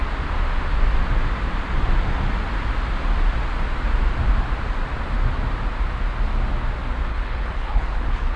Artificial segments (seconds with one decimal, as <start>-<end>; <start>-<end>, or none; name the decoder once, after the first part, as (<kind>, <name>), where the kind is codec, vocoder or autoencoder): 7.1-8.4 (codec, HILCodec)